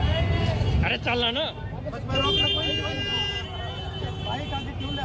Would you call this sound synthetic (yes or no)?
no